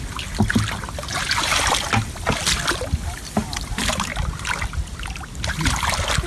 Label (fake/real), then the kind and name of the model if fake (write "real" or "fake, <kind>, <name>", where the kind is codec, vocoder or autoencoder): real